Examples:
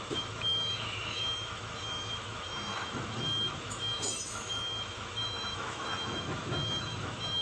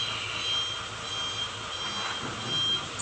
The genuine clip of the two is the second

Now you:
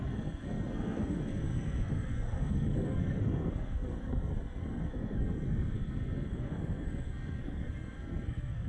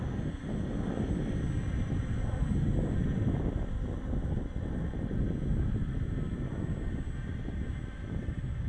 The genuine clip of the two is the second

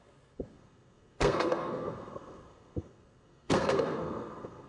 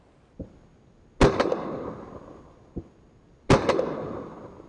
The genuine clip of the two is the second